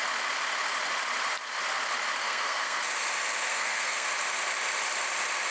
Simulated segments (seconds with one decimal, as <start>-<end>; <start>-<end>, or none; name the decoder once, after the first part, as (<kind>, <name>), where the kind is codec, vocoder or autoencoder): 2.2-2.8 (codec, SNAC); 3.5-4.1